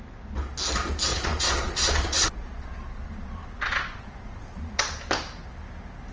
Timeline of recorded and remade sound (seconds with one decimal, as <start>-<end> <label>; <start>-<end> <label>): 0.0-1.1 recorded; 1.1-4.8 remade; 4.8-6.1 recorded

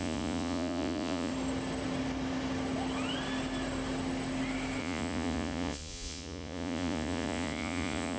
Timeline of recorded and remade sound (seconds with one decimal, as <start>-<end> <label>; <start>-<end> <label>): 0.0-1.3 remade; 1.3-4.8 recorded; 4.8-8.2 remade

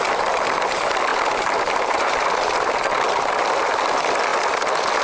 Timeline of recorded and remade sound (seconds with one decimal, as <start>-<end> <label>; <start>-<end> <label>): 0.0-1.1 recorded; 1.1-2.8 remade; 2.8-5.0 recorded

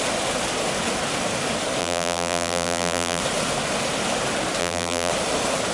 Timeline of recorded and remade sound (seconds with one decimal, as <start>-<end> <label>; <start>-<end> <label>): 0.0-1.8 recorded; 1.8-3.2 remade; 3.2-4.6 recorded; 4.6-5.1 remade; 5.1-5.7 recorded

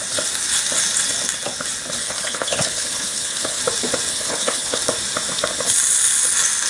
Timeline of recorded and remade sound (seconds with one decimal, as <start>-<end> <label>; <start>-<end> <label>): 0.0-2.0 recorded; 2.0-3.6 remade; 3.6-4.1 recorded; 4.1-4.8 remade; 4.8-6.7 recorded

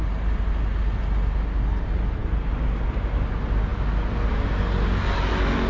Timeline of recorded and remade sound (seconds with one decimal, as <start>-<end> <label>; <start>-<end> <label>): 0.0-5.7 recorded

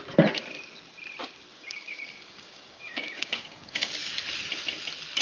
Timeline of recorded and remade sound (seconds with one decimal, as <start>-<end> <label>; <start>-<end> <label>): 0.0-1.5 recorded; 1.5-3.9 remade; 3.9-5.2 recorded